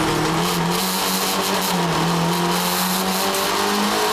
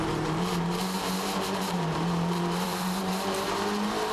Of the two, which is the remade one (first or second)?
second